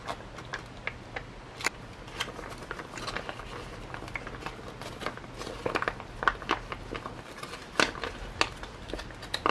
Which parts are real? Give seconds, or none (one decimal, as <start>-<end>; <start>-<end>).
0.0-0.5; 3.8-9.5